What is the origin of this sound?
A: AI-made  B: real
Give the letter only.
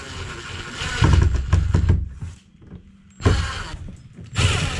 B